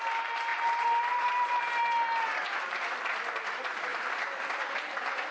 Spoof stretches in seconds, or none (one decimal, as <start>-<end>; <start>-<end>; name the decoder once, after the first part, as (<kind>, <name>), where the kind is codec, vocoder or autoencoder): 0.5-1.3 (vocoder, BigVGAN v2)